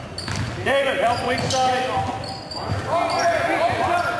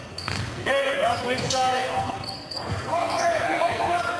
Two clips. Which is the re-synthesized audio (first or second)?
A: second